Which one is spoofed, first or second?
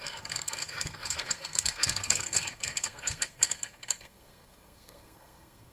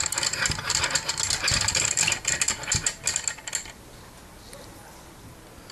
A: first